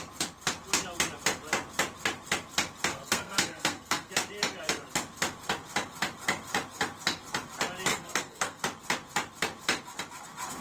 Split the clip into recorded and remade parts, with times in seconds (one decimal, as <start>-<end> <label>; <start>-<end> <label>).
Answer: 0.0-2.9 recorded; 2.9-4.1 remade; 4.1-7.9 recorded; 7.9-8.6 remade; 8.6-10.6 recorded